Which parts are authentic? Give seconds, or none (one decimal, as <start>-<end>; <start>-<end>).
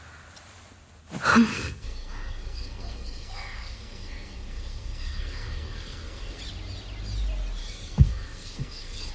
0.0-1.5; 6.4-7.6